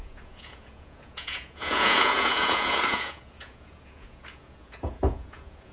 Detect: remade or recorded remade